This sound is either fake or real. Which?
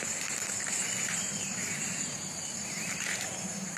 fake